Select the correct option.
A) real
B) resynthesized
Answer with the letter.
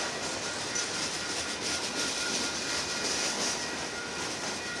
B